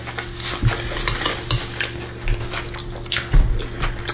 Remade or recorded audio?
recorded